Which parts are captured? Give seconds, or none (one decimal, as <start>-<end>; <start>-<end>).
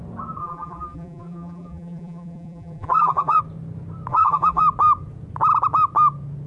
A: 0.0-0.4; 3.4-4.1; 4.6-6.5